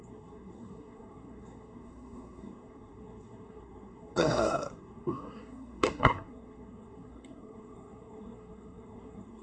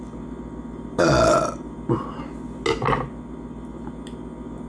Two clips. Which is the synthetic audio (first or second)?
first